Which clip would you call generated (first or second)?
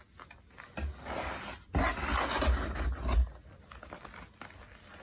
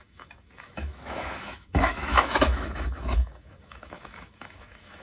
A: second